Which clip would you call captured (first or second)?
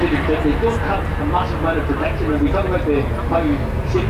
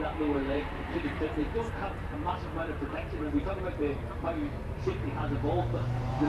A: first